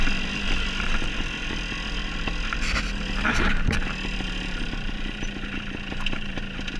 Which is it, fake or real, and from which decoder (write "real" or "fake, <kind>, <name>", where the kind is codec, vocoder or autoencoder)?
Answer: real